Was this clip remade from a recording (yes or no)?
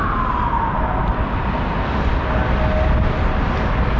no